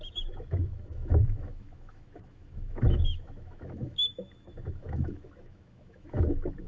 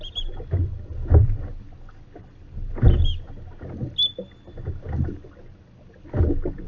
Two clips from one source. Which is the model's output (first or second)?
first